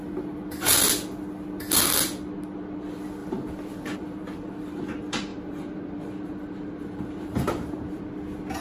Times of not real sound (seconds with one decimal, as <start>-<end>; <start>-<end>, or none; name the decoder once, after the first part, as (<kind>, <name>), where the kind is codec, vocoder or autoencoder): 3.2-4.8 (vocoder, BigVGAN v2); 5.3-8.0

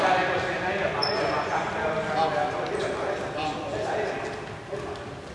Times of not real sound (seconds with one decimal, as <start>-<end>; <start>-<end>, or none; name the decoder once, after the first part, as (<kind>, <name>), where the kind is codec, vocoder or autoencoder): 1.0-1.7 (vocoder, Vocos)

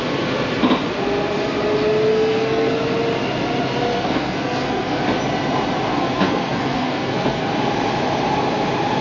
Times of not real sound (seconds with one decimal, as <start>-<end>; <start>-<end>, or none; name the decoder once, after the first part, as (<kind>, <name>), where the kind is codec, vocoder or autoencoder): 2.1-2.7 (codec, SNAC); 3.9-5.0; 5.9-7.5

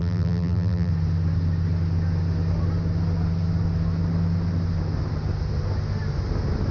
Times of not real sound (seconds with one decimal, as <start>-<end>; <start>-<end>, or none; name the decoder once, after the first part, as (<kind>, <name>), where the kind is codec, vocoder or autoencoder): 0.0-0.9 (vocoder, BigVGAN v2)

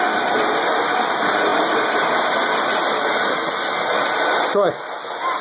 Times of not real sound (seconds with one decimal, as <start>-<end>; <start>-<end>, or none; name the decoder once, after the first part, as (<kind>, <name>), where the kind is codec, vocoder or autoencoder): none

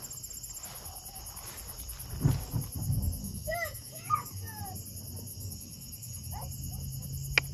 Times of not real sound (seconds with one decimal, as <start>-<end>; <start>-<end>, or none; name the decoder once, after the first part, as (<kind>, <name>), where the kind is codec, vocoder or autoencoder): 3.2-4.6 (codec, DAC); 5.3-6.3

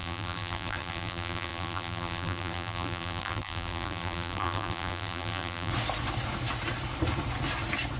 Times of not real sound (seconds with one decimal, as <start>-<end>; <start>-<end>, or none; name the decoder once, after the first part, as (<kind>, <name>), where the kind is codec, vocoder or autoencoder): 0.0-5.7 (vocoder, BigVGAN v2)

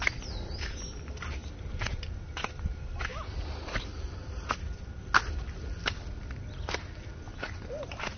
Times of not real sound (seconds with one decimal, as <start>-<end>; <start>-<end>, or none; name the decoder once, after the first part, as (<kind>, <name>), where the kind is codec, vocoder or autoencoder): none